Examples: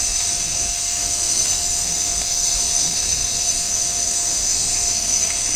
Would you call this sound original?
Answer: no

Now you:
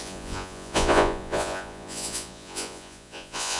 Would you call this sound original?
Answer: no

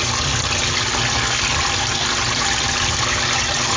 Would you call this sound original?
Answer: yes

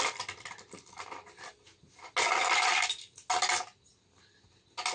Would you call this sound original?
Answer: yes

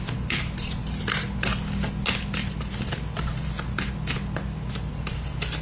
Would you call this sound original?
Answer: yes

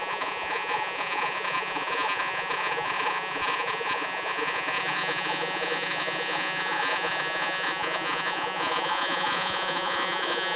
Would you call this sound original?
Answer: no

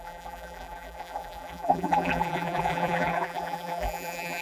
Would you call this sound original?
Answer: no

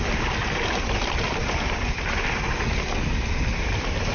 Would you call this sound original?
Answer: yes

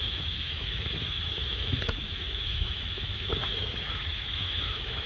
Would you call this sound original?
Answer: no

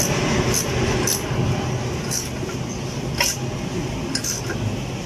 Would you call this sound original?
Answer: yes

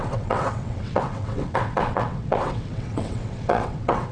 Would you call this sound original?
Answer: no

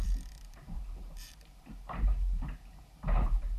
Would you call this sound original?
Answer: no